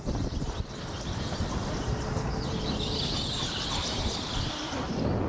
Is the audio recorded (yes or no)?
yes